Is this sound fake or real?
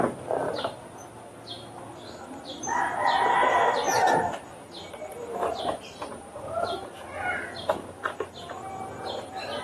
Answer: real